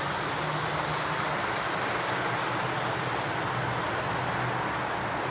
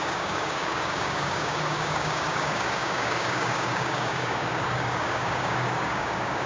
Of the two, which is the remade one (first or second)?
second